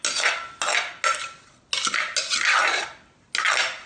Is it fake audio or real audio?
real